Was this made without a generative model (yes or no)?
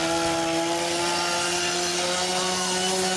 yes